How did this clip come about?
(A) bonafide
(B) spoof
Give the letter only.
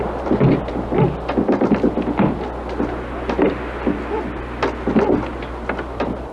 A